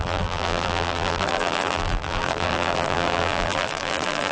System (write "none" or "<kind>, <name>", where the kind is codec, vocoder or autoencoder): vocoder, BigVGAN v2